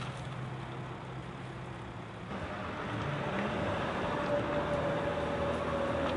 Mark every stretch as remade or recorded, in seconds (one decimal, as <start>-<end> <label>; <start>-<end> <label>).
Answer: 0.0-1.2 recorded; 1.2-2.6 remade; 2.6-6.2 recorded